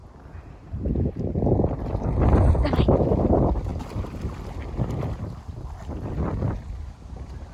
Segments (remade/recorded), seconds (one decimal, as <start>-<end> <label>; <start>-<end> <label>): 0.0-7.5 recorded